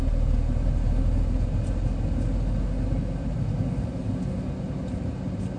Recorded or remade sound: recorded